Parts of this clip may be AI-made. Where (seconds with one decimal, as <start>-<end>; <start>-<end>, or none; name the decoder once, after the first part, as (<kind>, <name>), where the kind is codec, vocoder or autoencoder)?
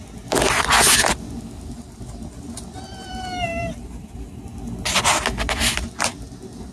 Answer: 3.5-4.1 (vocoder, BigVGAN v2)